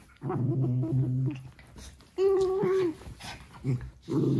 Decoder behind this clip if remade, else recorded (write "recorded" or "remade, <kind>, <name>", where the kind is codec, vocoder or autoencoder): recorded